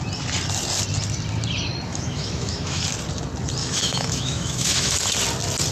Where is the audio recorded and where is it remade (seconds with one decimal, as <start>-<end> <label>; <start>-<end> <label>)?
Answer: 0.0-1.9 recorded; 1.9-2.8 remade; 2.8-3.6 recorded; 3.6-5.0 remade; 5.0-5.7 recorded